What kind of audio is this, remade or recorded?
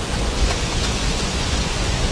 remade